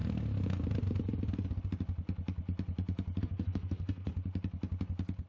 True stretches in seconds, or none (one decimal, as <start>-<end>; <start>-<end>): 0.0-3.2; 4.1-5.3